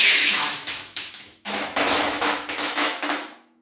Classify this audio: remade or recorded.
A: remade